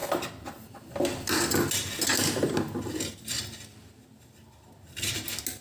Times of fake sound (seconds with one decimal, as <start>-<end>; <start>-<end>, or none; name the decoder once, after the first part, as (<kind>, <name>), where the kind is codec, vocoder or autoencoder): none